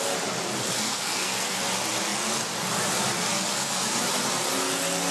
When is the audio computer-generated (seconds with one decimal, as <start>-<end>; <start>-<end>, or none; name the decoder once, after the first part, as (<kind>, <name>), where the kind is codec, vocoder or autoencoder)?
0.7-1.6 (codec, SNAC); 3.5-4.0